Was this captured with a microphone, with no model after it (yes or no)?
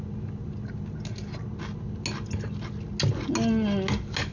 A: yes